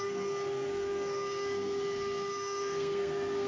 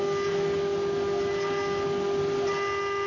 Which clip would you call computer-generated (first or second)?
first